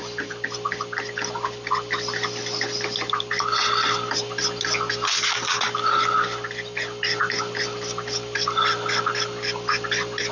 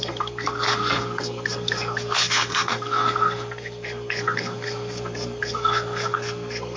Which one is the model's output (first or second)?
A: second